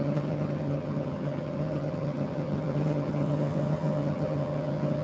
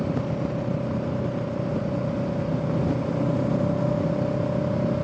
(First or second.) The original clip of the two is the second